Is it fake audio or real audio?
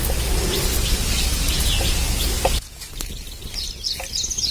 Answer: real